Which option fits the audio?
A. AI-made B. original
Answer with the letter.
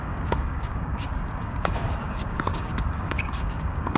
A